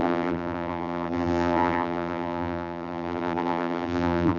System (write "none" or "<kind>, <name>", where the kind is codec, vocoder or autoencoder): vocoder, BigVGAN v2